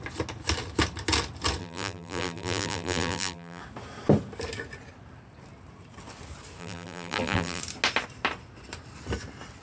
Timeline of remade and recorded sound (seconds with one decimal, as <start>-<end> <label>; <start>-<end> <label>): 0.0-1.6 recorded; 1.6-3.6 remade; 3.6-6.6 recorded; 6.6-7.6 remade; 7.6-9.6 recorded